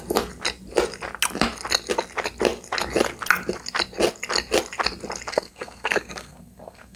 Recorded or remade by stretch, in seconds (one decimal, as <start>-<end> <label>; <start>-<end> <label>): 0.0-5.3 recorded; 5.3-7.0 remade